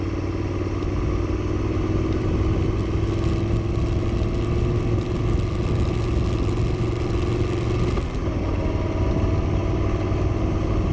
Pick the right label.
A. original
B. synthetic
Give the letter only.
A